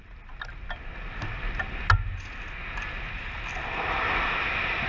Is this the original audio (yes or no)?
yes